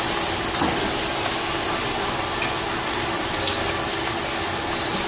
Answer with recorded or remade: recorded